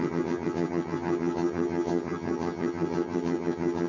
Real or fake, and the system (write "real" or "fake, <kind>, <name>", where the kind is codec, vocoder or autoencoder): fake, vocoder, HiFi-GAN